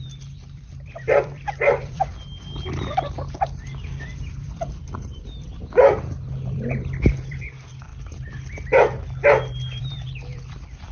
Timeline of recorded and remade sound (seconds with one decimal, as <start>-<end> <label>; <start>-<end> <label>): 0.0-2.1 remade; 2.1-4.2 recorded; 4.2-7.9 remade; 7.9-9.8 recorded; 9.8-10.9 remade